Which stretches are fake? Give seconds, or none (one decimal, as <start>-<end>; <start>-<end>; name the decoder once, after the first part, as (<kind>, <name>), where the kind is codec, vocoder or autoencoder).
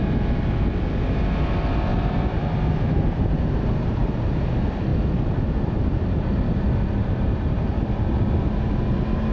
1.9-4.4 (vocoder, BigVGAN v2); 7.0-7.8